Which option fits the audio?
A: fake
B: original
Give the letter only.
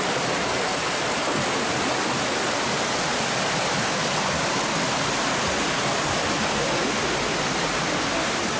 B